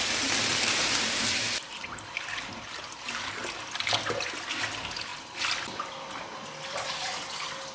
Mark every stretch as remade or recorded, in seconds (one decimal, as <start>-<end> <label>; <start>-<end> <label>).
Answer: 0.0-0.5 recorded; 0.5-3.4 remade; 3.4-7.7 recorded